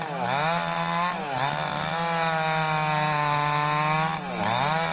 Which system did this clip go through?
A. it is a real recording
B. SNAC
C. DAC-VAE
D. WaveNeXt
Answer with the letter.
A